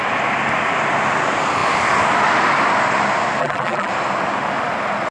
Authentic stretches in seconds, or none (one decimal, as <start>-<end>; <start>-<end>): 0.0-3.4; 3.9-5.1